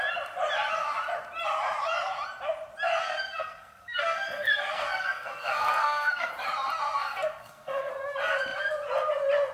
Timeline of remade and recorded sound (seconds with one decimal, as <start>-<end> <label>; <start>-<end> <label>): 0.0-3.0 recorded; 3.0-6.3 remade; 6.3-7.0 recorded; 7.0-7.9 remade; 7.9-9.5 recorded